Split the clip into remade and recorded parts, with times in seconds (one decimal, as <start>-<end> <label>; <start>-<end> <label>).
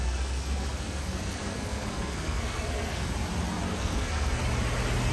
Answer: 0.0-3.1 remade; 3.1-3.7 recorded; 3.7-4.4 remade; 4.4-5.1 recorded